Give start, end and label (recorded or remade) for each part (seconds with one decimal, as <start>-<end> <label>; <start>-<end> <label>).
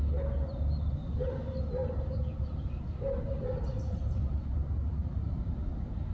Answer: 0.0-6.1 recorded